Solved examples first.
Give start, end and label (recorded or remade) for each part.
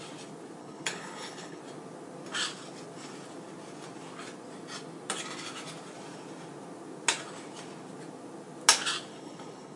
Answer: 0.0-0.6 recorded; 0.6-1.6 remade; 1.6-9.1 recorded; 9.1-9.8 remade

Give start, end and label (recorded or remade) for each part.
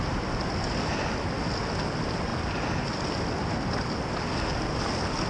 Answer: 0.0-5.3 recorded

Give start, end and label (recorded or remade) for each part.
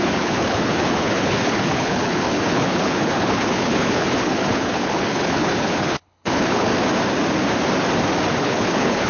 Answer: 0.0-6.7 remade; 6.7-8.4 recorded; 8.4-9.1 remade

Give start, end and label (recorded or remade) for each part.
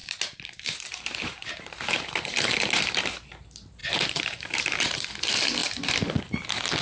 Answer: 0.0-3.0 remade; 3.0-3.8 recorded; 3.8-5.1 remade; 5.1-6.8 recorded